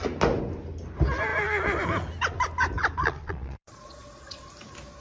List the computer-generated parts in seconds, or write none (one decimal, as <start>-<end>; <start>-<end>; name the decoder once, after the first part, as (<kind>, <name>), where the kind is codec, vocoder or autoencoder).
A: 3.0-4.4 (vocoder, Vocos)